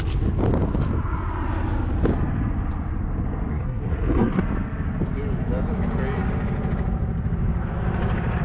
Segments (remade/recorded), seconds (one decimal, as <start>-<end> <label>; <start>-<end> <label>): 0.0-3.5 recorded; 3.5-4.4 remade; 4.4-8.4 recorded